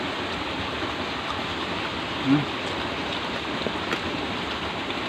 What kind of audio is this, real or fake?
real